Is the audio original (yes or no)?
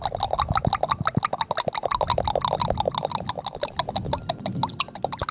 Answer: yes